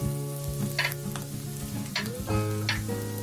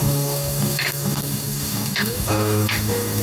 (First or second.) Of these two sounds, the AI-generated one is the second